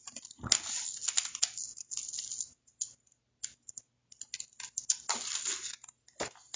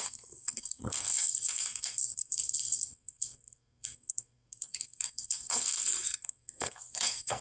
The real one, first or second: first